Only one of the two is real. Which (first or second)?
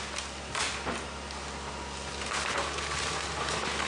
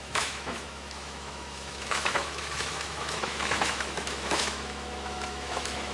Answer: first